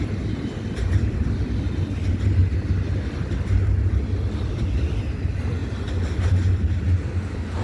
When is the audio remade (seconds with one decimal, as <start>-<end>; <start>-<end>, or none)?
0.0-2.4; 3.0-7.6